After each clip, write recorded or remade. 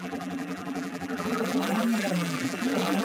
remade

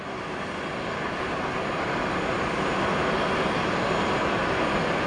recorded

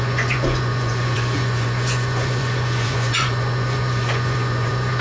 remade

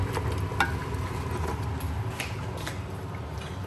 recorded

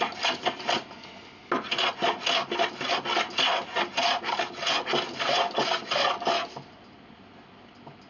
recorded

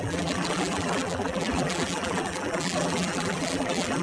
remade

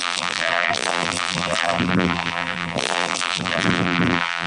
remade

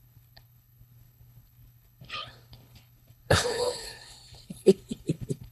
remade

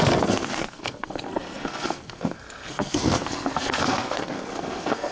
remade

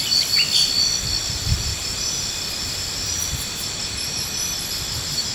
recorded